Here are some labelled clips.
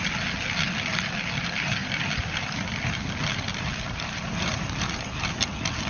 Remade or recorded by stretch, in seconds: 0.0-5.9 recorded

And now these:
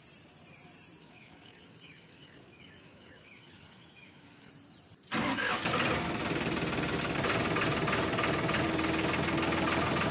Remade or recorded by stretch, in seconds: 0.0-1.0 recorded; 1.0-4.5 remade; 4.5-10.1 recorded

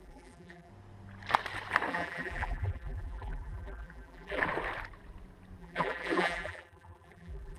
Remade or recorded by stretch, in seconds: 0.0-0.7 remade; 0.7-1.9 recorded; 1.9-4.4 remade; 4.4-5.6 recorded; 5.6-7.6 remade

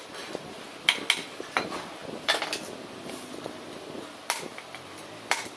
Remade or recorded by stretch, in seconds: 0.0-5.6 recorded